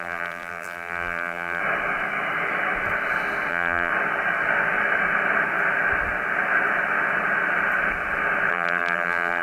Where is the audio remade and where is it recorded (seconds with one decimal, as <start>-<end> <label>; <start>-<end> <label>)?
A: 0.0-1.6 remade; 1.6-3.5 recorded; 3.5-3.9 remade; 3.9-8.5 recorded; 8.5-9.4 remade